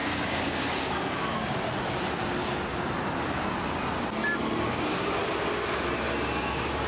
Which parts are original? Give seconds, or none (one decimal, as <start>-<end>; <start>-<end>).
1.5-4.7; 5.2-6.4